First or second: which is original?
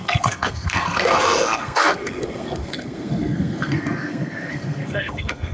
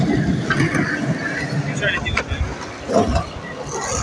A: second